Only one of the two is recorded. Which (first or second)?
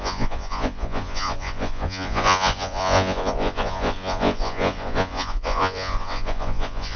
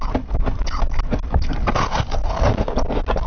second